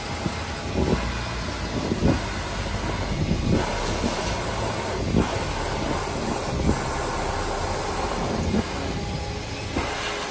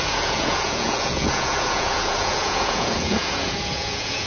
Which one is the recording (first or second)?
first